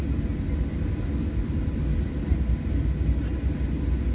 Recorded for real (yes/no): yes